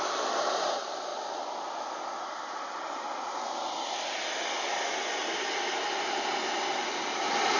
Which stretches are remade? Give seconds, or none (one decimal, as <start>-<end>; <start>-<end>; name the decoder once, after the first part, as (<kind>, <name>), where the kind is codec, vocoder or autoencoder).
none